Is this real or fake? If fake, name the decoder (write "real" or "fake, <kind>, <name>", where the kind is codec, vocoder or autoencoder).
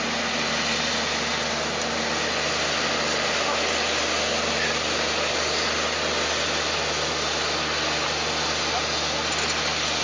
real